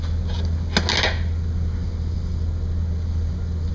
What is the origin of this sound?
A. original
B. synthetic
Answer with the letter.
A